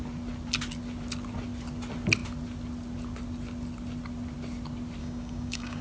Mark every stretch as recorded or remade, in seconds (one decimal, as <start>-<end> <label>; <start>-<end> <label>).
0.0-5.0 recorded; 5.0-5.8 remade